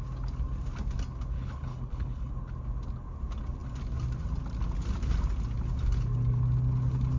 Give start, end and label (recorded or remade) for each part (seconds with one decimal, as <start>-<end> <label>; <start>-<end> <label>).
0.0-1.3 recorded; 1.3-2.3 remade; 2.3-7.2 recorded